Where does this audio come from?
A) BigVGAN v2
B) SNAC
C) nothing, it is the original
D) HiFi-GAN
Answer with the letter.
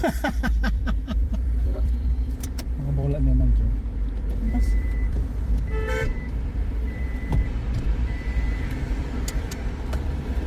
A